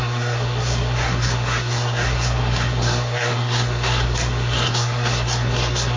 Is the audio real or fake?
fake